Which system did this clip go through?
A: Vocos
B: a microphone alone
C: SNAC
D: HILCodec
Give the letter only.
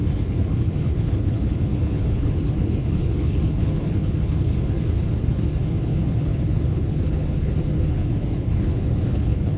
D